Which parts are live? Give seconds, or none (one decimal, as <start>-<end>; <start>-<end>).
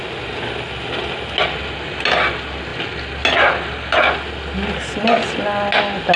0.0-6.2